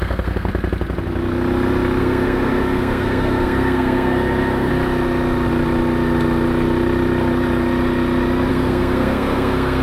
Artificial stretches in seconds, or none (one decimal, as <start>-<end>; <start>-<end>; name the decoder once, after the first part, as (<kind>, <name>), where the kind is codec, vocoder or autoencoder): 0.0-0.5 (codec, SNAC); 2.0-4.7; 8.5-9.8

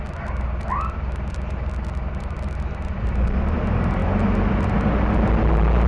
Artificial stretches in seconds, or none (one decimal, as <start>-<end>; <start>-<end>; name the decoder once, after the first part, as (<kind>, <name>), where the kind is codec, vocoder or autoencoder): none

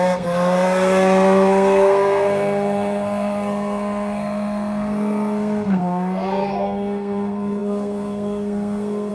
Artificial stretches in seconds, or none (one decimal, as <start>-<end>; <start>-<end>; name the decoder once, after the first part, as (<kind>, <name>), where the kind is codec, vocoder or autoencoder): 0.0-9.1 (codec, SNAC)